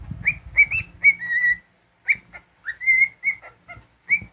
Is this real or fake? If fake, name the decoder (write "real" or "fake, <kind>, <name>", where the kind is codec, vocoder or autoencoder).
real